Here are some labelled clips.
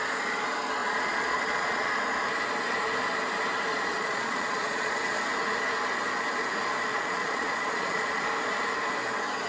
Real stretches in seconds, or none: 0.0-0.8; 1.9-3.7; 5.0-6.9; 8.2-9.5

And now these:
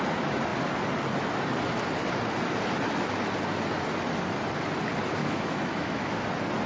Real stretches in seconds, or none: 0.0-5.2; 6.2-6.7

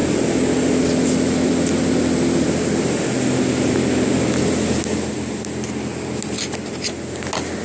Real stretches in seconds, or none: 0.0-7.6